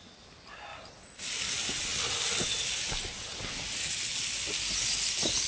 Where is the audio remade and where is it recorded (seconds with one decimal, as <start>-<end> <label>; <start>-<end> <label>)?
0.0-5.5 recorded